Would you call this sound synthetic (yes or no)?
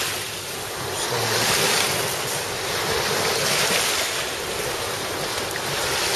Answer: no